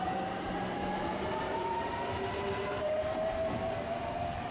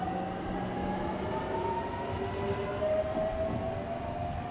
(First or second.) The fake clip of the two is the first